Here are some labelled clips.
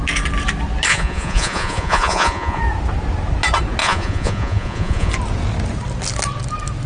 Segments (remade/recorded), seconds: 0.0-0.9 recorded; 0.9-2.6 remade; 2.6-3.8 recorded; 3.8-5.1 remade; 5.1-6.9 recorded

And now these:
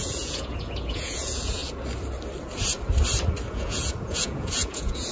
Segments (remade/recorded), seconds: 0.0-1.6 remade; 1.6-3.5 recorded; 3.5-5.1 remade

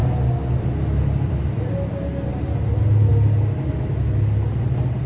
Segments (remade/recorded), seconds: 0.0-5.1 recorded

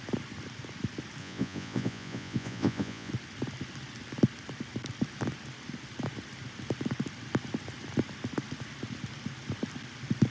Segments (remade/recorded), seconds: 0.0-1.2 recorded; 1.2-3.1 remade; 3.1-10.3 recorded